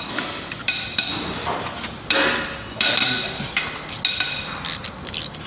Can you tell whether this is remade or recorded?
recorded